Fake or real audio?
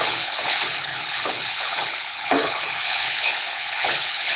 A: fake